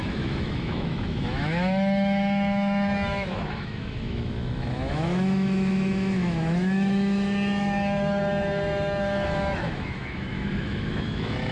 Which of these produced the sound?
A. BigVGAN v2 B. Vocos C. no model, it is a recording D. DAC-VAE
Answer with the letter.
D